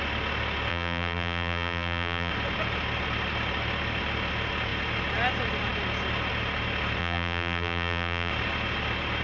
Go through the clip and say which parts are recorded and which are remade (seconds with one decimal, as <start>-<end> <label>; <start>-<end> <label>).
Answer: 0.0-0.7 recorded; 0.7-2.3 remade; 2.3-7.0 recorded; 7.0-8.3 remade; 8.3-9.2 recorded